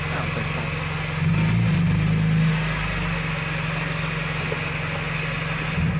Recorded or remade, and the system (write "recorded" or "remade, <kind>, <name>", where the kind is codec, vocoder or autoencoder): recorded